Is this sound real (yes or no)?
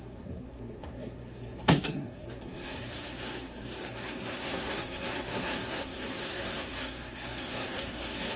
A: no